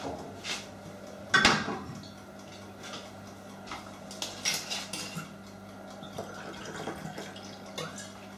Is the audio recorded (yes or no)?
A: yes